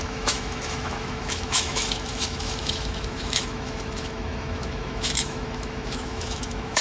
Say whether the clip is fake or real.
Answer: fake